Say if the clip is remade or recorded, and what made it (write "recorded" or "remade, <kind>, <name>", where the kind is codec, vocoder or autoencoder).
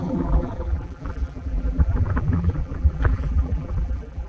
remade, vocoder, BigVGAN v2